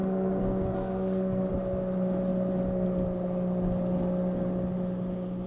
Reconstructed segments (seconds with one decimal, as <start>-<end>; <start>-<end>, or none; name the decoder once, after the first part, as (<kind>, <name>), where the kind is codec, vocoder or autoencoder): 0.0-1.5 (codec, SNAC)

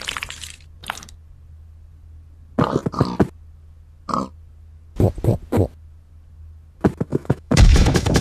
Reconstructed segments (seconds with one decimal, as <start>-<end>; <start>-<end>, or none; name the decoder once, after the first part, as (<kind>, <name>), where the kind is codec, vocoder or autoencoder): 7.1-8.2 (autoencoder, DAC-VAE)